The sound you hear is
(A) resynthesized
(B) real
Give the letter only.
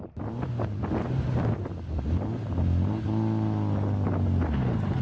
B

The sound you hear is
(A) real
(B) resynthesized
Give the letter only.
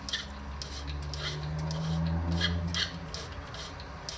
A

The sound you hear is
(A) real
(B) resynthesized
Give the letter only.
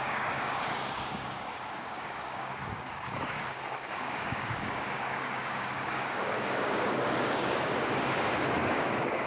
B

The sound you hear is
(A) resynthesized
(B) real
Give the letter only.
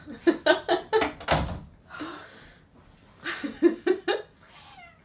B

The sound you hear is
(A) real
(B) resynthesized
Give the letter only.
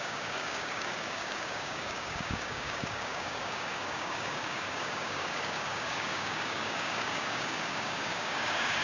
B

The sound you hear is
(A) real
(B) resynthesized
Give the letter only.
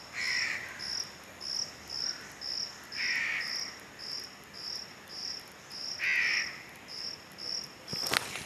A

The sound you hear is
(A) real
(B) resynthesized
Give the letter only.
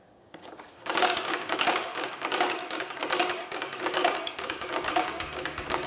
B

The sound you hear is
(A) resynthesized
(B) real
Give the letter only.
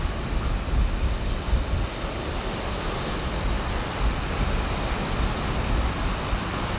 B